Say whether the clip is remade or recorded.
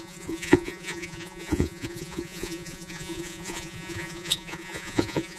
remade